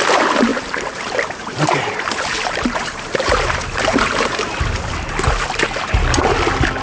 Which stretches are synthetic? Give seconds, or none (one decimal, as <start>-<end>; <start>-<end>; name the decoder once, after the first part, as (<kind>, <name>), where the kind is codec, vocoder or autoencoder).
0.5-4.6 (vocoder, BigVGAN v2)